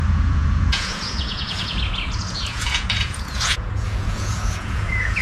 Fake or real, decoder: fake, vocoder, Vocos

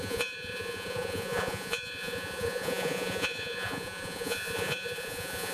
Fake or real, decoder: fake, vocoder, Vocos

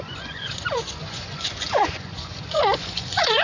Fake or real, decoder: fake, vocoder, Vocos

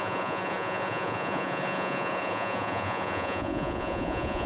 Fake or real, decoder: fake, vocoder, Vocos